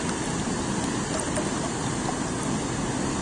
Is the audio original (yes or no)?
yes